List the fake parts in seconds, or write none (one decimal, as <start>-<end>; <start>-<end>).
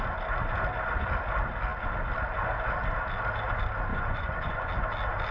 3.9-4.7